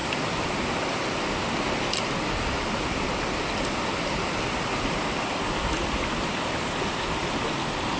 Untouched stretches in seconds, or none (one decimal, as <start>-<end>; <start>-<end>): 0.0-8.0